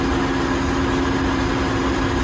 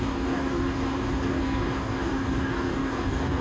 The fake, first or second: second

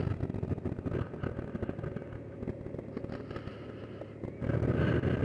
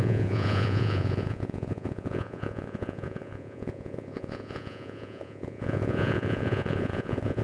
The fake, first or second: second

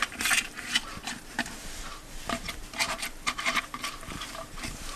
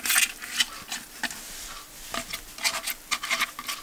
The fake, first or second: first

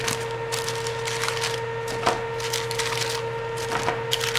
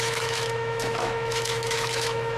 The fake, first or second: second